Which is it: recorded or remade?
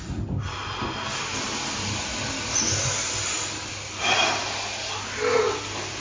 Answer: recorded